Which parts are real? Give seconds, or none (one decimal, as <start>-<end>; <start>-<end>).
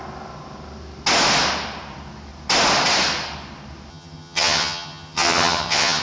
0.0-3.9